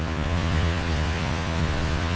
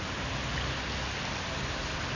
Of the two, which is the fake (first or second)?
first